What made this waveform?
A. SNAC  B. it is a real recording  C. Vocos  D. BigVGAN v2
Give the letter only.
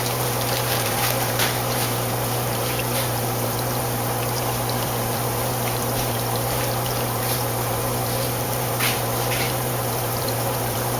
D